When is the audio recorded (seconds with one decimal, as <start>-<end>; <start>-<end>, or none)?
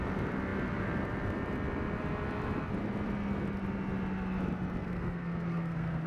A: 0.0-4.8